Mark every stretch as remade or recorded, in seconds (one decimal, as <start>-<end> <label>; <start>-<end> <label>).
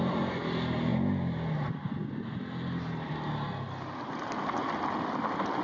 0.0-5.6 recorded